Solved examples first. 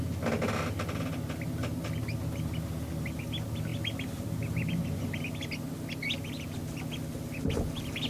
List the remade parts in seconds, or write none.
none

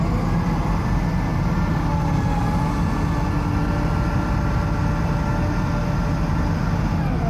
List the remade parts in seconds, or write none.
none

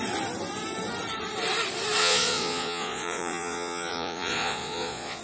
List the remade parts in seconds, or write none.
2.0-5.2 (vocoder, Vocos)